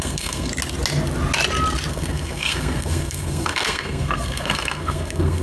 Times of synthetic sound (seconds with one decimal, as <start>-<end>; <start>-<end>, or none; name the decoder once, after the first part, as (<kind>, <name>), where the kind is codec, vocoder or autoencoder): 0.0-0.5 (codec, SNAC); 1.9-5.4